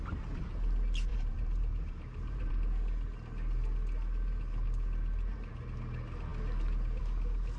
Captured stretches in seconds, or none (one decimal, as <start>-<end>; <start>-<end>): 0.0-1.1; 2.5-7.6